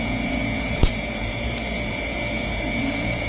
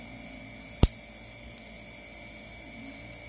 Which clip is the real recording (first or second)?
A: second